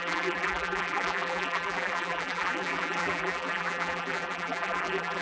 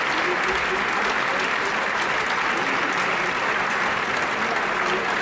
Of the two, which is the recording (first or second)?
second